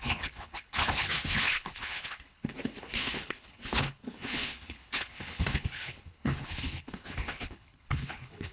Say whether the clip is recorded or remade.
remade